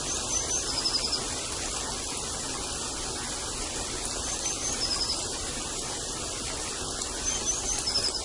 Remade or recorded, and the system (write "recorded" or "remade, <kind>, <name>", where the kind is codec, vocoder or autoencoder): recorded